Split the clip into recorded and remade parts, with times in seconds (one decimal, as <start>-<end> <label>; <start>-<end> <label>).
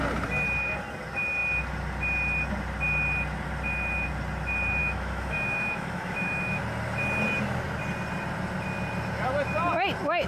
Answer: 0.0-4.8 recorded; 4.8-6.6 remade; 6.6-10.3 recorded